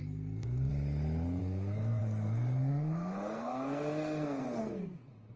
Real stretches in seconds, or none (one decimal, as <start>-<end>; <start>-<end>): 0.7-1.4